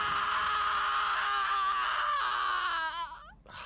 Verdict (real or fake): real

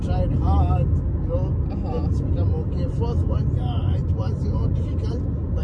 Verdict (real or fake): real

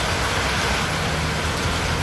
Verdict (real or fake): real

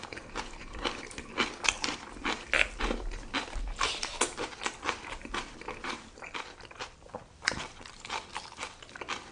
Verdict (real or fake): fake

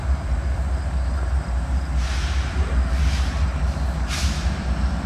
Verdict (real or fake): fake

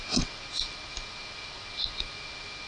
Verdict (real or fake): real